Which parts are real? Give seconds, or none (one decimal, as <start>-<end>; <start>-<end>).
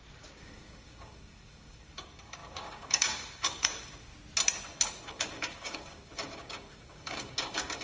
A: 4.1-5.0